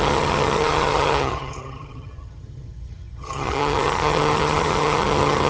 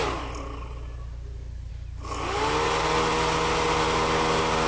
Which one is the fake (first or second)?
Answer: first